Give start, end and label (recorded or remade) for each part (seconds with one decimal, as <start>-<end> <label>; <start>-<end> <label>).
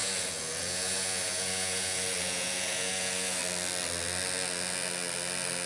0.0-3.4 remade; 3.4-5.7 recorded